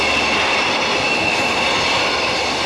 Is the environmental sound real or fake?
real